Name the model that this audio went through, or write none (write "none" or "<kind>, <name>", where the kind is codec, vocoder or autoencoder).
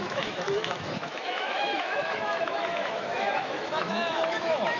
autoencoder, DAC-VAE